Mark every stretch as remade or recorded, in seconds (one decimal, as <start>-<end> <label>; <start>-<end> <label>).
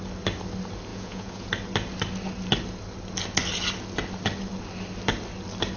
0.0-0.9 recorded; 0.9-1.5 remade; 1.5-5.8 recorded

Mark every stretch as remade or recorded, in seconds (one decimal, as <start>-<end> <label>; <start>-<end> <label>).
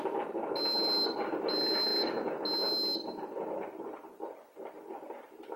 0.0-5.6 recorded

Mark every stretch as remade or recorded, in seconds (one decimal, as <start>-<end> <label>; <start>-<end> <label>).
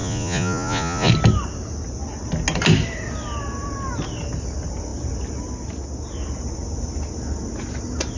0.0-1.1 remade; 1.1-8.2 recorded